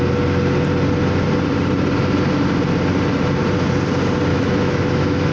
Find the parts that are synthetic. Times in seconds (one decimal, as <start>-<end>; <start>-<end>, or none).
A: 4.3-5.3